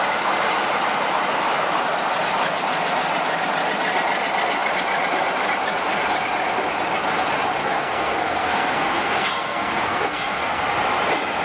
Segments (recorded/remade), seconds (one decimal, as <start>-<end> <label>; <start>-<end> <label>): 0.0-7.6 recorded; 7.6-10.6 remade; 10.6-11.4 recorded